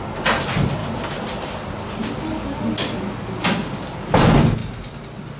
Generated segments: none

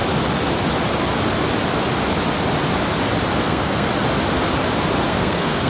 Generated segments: 3.4-3.9 (codec, SNAC); 5.1-5.7

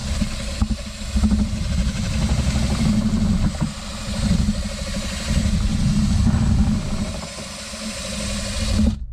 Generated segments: none

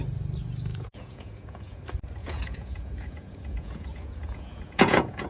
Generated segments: 0.7-1.8 (vocoder, Vocos); 2.2-5.3